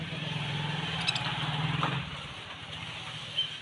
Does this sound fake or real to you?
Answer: real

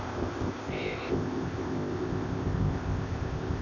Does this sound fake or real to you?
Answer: fake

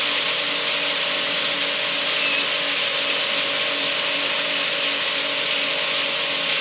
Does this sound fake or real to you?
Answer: real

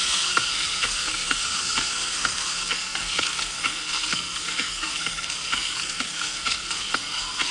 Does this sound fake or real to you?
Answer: fake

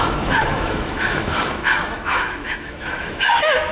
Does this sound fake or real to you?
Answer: fake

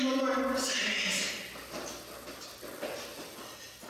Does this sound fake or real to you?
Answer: real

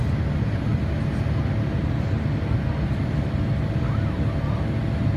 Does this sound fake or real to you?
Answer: real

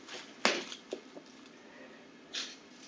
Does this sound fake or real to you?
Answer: real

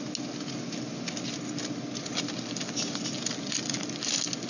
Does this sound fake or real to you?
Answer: real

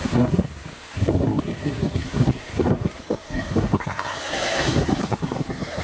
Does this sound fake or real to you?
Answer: fake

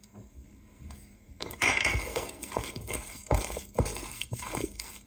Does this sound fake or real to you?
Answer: fake